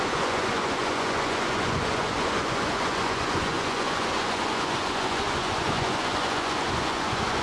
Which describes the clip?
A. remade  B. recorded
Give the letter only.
A